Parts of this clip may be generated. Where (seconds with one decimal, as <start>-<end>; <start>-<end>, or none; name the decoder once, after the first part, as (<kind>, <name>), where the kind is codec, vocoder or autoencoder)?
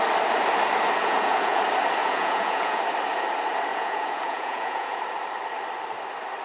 1.0-1.6 (vocoder, Vocos); 2.0-2.8; 3.7-5.0